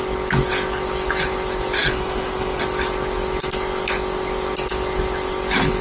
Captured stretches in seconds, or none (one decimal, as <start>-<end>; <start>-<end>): 0.0-1.8; 2.6-5.8